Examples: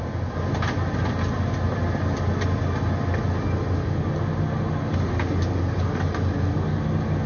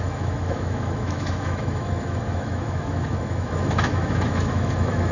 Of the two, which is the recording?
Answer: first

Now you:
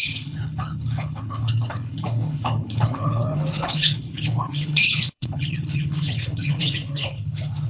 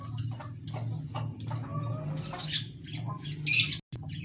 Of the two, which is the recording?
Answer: second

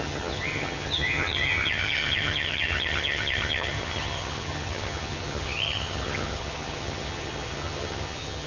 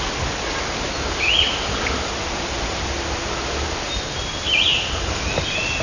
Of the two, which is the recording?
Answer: second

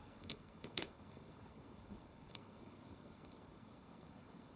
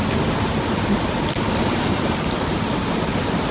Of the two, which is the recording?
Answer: second